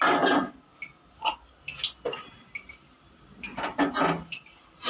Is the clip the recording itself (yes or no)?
yes